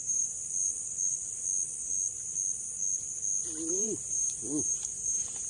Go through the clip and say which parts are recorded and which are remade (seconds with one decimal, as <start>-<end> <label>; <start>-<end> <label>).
0.0-0.4 remade; 0.4-3.7 recorded; 3.7-5.5 remade